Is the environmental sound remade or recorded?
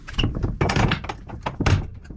recorded